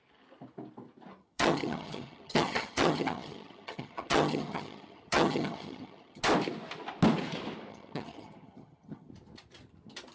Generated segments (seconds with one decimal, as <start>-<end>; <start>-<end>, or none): 1.2-6.2; 7.7-9.1